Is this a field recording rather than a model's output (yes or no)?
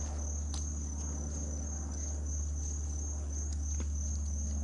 yes